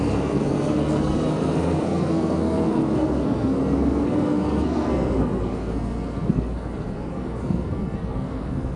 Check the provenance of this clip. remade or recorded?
remade